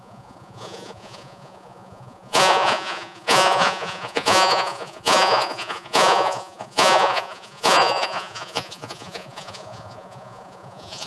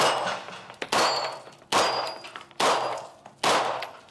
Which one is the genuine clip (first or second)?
second